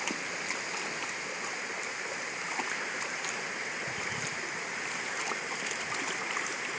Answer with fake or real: real